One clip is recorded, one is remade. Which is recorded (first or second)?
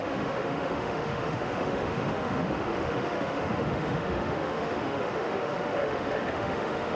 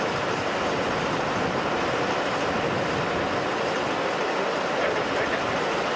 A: second